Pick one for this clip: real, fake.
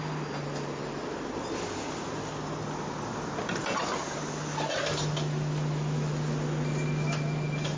real